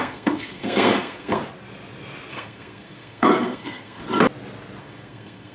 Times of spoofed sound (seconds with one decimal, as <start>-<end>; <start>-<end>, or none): 0.0-1.4; 2.3-4.0; 4.8-5.5